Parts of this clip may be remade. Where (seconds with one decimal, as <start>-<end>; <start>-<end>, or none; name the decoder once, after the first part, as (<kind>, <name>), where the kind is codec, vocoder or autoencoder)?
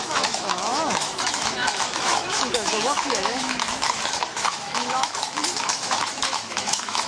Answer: 0.0-7.1 (autoencoder, DAC-VAE)